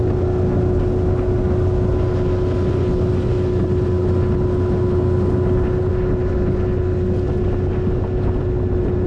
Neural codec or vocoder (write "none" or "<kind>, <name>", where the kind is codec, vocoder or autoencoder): none